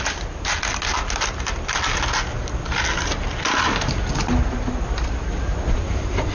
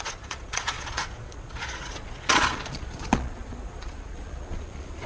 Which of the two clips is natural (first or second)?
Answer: first